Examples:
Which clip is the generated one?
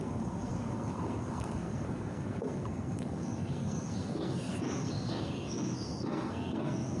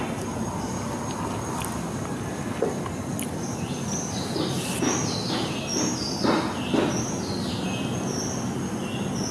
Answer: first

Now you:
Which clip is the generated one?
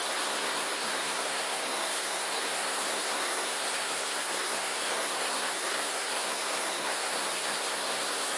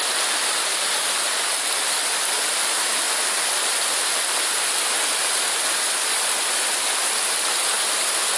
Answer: first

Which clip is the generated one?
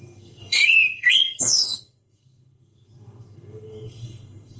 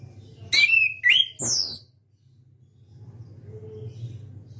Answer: first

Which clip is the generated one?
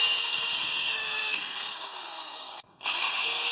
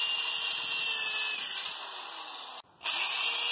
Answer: first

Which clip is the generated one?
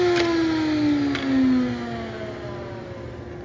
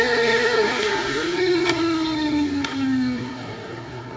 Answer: second